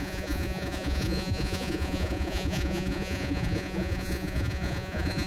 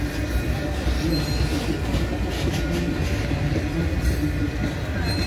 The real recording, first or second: second